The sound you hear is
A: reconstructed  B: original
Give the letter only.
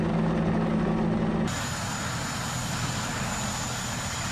B